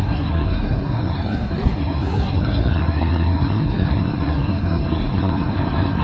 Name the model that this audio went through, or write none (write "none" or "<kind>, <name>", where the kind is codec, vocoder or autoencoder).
codec, SNAC